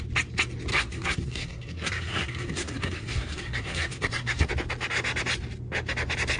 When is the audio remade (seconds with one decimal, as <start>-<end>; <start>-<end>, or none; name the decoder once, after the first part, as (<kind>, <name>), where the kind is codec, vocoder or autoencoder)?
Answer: 0.7-4.5 (codec, SNAC)